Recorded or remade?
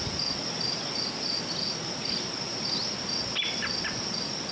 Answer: recorded